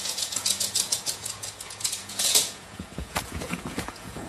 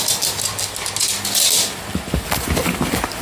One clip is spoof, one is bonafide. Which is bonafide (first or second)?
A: second